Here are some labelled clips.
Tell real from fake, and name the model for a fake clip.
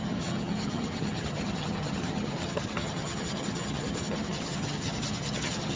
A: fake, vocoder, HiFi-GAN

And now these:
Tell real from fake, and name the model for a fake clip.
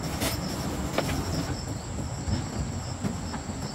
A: real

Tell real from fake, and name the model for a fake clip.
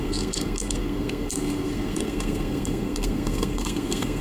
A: fake, codec, SNAC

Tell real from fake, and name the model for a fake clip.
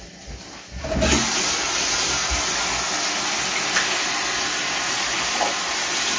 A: real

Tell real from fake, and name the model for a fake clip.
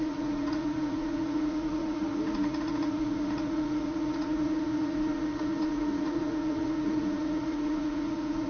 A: fake, vocoder, Vocos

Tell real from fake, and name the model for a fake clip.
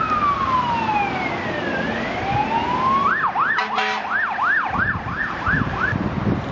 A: real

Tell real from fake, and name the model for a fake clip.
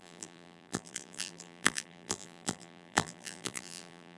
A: fake, vocoder, BigVGAN v2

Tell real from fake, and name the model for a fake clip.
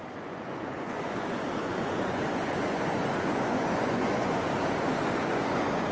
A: fake, vocoder, Vocos